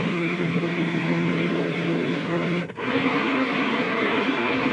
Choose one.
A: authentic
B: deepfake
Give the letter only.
B